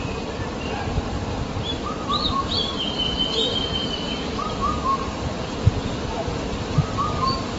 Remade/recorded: remade